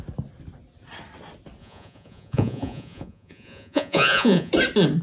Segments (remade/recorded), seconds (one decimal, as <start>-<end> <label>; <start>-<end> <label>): 0.0-1.6 recorded; 1.6-4.5 remade; 4.5-5.0 recorded